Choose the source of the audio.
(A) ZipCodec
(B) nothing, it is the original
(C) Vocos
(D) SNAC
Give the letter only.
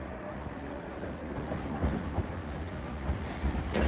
C